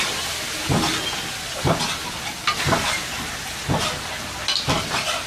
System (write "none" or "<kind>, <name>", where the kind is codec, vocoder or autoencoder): none